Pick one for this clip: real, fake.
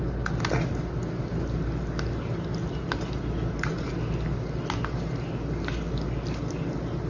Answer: real